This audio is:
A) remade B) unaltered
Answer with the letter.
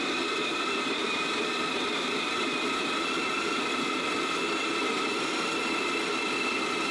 A